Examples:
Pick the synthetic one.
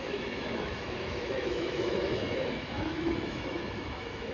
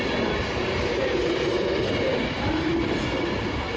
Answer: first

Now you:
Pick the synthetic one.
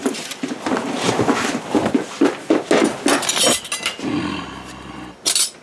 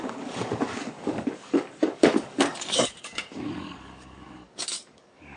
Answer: second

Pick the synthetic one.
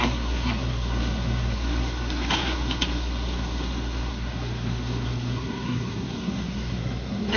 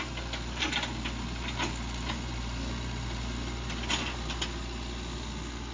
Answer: first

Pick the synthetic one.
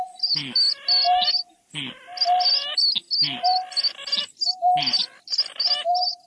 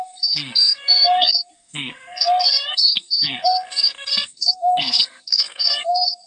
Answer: second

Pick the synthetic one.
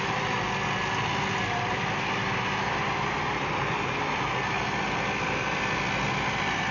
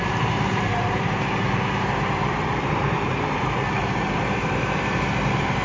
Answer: second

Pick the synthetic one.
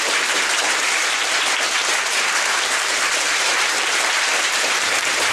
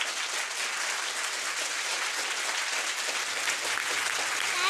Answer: first